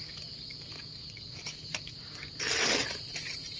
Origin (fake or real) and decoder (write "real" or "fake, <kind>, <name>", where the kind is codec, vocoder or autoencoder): real